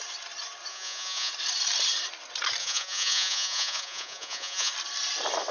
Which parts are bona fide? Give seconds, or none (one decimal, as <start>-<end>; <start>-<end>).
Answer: 0.0-0.7; 1.3-2.6; 4.7-5.5

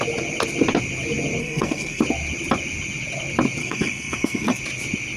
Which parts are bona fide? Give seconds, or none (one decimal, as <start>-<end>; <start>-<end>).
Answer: 0.0-1.4; 2.0-3.6; 4.6-5.2